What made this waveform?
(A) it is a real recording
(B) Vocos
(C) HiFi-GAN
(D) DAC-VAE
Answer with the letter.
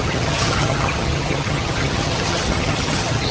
C